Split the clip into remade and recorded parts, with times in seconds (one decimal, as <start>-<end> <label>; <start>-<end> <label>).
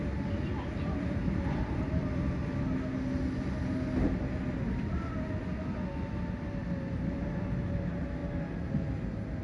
0.0-9.4 recorded